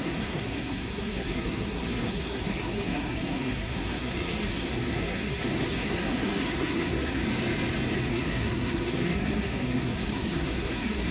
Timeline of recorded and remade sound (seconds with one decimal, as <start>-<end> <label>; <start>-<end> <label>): 0.0-7.2 remade; 7.2-8.1 recorded; 8.1-11.1 remade